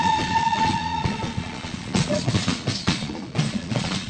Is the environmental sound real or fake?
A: fake